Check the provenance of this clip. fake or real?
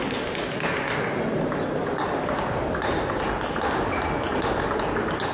real